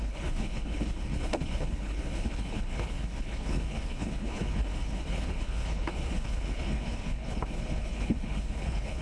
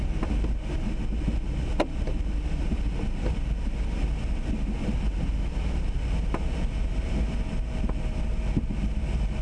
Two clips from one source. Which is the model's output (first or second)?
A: first